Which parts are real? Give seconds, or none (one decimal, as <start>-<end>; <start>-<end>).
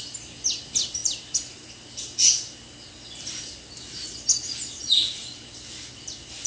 0.0-6.5